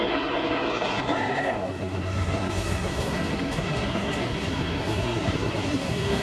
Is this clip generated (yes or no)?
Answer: yes